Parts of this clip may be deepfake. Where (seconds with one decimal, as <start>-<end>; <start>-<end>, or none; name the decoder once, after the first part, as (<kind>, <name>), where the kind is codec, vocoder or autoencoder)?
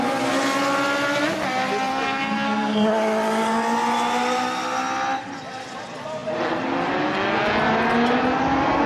1.9-2.9 (codec, SNAC)